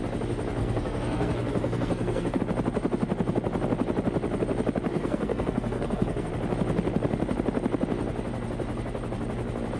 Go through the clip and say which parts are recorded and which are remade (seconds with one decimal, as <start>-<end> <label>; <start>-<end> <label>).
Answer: 0.0-0.6 recorded; 0.6-2.4 remade; 2.4-4.9 recorded; 4.9-6.3 remade; 6.3-9.8 recorded